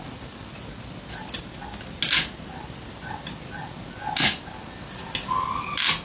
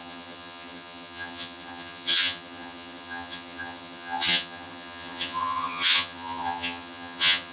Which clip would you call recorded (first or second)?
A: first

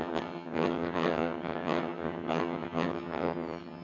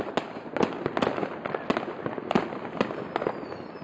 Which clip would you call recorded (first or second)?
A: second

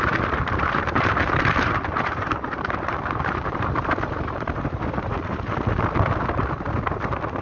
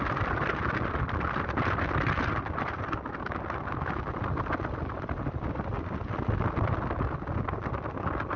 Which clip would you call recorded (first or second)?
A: second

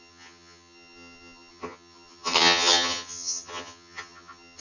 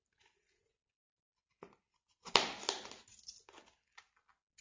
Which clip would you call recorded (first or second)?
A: second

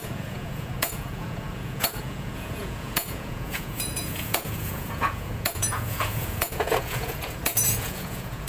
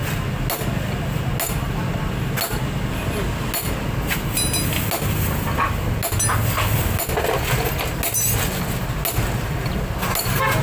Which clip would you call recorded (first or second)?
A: second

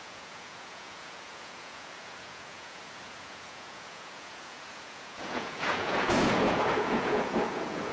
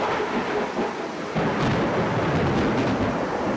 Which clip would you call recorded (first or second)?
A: second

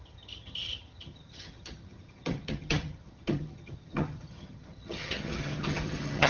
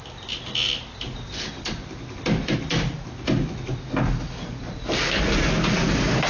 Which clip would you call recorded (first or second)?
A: second